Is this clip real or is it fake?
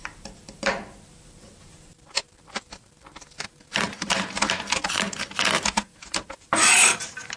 fake